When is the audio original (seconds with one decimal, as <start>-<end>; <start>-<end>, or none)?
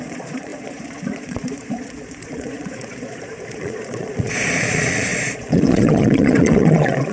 none